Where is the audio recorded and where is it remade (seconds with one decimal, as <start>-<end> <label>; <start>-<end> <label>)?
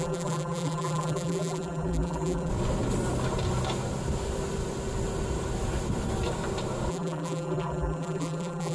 0.0-2.5 remade; 2.5-6.9 recorded; 6.9-8.7 remade